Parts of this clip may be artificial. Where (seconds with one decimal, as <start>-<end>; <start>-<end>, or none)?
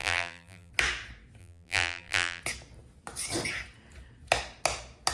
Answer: 0.0-0.7; 1.4-2.4